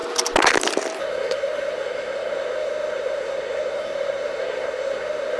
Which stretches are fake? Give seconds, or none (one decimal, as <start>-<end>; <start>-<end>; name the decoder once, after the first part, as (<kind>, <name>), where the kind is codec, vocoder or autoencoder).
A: 1.0-5.4 (codec, SNAC)